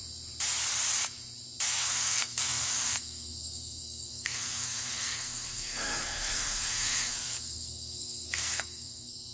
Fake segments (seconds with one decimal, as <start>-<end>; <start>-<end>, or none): 1.7-9.3